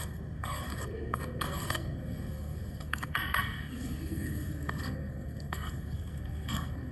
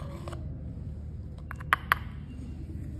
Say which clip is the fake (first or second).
first